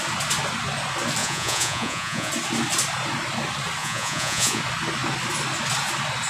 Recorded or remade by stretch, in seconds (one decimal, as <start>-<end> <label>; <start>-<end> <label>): 0.0-1.2 recorded; 1.2-2.3 remade; 2.3-3.8 recorded; 3.8-4.6 remade; 4.6-6.3 recorded